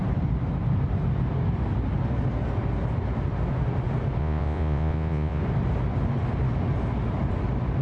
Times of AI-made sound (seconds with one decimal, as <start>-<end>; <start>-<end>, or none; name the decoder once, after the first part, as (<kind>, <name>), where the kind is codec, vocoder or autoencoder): 4.2-5.4 (vocoder, Vocos)